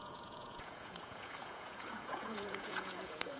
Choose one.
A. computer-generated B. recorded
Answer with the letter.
A